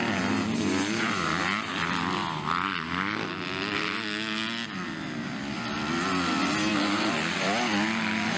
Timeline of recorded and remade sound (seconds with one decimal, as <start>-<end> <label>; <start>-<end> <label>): 0.0-8.4 recorded